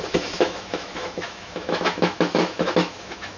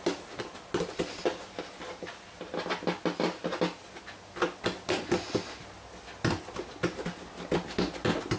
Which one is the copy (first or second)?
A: first